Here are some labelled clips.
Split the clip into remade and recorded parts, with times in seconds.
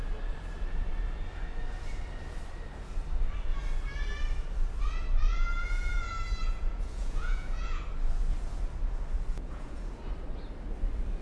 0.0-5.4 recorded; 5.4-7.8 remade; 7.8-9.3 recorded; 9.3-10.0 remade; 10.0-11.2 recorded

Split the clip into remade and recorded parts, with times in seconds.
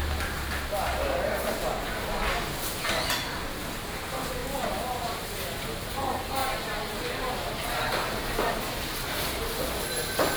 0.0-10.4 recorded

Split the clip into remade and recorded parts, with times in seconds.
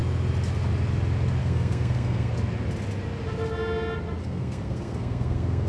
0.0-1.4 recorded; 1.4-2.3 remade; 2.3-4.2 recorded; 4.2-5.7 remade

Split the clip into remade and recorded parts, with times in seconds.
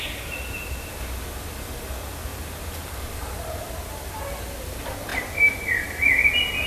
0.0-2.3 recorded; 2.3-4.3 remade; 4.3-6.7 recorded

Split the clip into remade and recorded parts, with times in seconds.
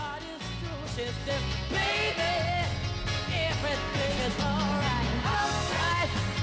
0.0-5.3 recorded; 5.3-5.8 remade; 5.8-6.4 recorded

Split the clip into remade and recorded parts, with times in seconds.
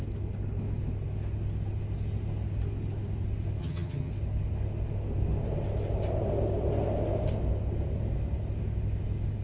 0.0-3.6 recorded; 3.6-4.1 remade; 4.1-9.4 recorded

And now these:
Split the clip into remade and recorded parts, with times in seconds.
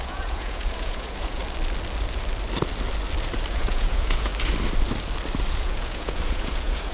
0.0-1.4 remade; 1.4-3.5 recorded; 3.5-4.3 remade; 4.3-5.5 recorded; 5.5-6.9 remade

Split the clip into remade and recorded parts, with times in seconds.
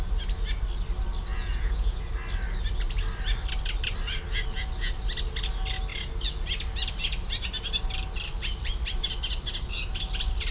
0.0-1.3 recorded; 1.3-2.1 remade; 2.1-10.5 recorded